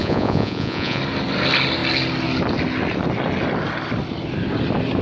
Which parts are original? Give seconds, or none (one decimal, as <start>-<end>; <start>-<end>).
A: 1.0-5.0